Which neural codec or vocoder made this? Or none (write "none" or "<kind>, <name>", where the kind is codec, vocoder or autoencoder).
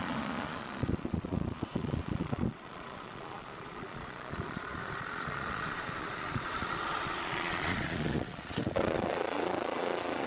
vocoder, Vocos